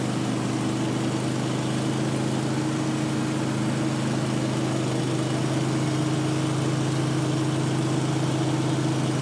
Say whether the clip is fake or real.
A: real